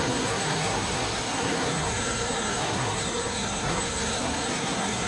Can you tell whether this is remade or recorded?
remade